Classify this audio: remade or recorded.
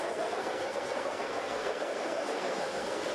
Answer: remade